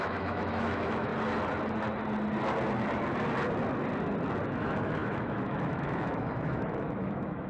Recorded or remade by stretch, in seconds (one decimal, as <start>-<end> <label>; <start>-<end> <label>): 0.0-1.1 remade; 1.1-4.6 recorded; 4.6-7.5 remade